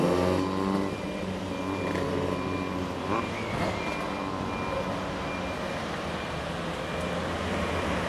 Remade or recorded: recorded